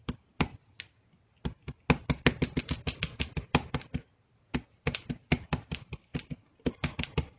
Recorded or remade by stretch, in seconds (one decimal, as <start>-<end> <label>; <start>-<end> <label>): 0.0-0.5 remade; 0.5-2.6 recorded; 2.6-6.1 remade; 6.1-6.7 recorded; 6.7-7.4 remade

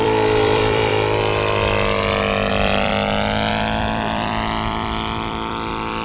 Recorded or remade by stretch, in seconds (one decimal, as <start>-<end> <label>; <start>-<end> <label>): 0.0-0.9 remade; 0.9-2.5 recorded; 2.5-2.9 remade; 2.9-3.5 recorded; 3.5-6.0 remade

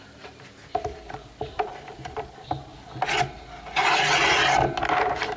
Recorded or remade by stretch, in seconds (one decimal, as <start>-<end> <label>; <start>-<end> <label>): 0.0-2.7 remade; 2.7-4.8 recorded; 4.8-5.4 remade